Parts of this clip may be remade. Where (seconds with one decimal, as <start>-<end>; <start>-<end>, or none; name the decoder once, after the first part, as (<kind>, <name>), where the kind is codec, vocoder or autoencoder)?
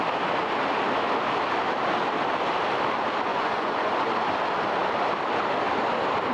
3.3-3.9 (vocoder, Vocos)